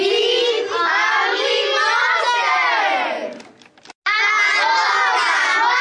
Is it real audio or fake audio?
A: real